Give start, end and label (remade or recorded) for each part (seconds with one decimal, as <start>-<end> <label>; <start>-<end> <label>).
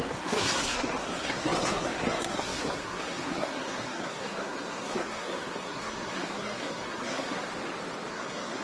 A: 0.0-7.5 remade; 7.5-8.1 recorded; 8.1-8.6 remade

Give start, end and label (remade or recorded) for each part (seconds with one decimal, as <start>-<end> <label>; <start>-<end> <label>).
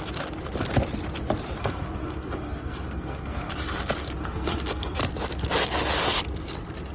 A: 0.0-1.6 recorded; 1.6-3.5 remade; 3.5-4.2 recorded; 4.2-5.0 remade; 5.0-6.9 recorded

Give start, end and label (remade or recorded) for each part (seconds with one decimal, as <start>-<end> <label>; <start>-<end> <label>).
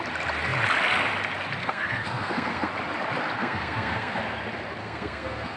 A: 0.0-1.6 recorded; 1.6-2.7 remade; 2.7-3.4 recorded; 3.4-4.2 remade; 4.2-4.8 recorded; 4.8-5.6 remade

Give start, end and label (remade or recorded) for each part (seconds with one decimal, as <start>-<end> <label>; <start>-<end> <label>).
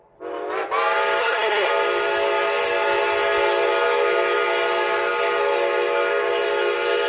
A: 0.0-1.2 recorded; 1.2-1.7 remade; 1.7-7.1 recorded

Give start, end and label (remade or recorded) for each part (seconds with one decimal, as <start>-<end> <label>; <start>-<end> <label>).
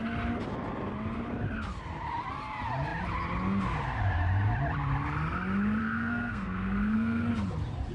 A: 0.0-5.8 recorded; 5.8-7.3 remade; 7.3-7.9 recorded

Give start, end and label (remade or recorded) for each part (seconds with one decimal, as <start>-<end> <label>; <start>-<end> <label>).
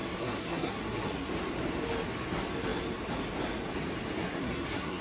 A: 0.0-1.3 remade; 1.3-4.2 recorded; 4.2-5.0 remade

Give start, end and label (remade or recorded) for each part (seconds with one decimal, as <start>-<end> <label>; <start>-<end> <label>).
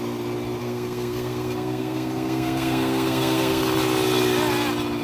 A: 0.0-0.6 recorded; 0.6-3.6 remade; 3.6-5.0 recorded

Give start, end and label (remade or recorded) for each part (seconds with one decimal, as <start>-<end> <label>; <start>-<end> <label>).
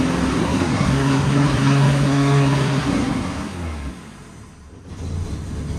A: 0.0-0.4 recorded; 0.4-3.9 remade; 3.9-5.8 recorded